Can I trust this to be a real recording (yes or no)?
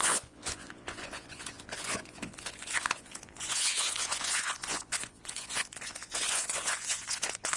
no